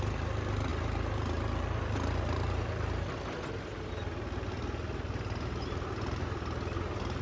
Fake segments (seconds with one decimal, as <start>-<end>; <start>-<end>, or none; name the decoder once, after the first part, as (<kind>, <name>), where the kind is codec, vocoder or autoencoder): none